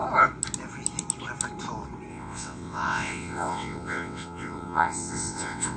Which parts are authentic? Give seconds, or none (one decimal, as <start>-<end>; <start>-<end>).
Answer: 0.0-2.1